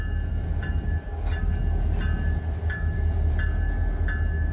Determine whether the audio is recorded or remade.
recorded